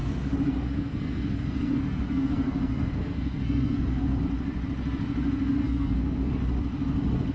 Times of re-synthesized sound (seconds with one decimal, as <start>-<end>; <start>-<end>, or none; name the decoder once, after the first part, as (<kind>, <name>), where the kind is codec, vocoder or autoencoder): 0.0-4.2 (codec, SNAC); 5.6-6.3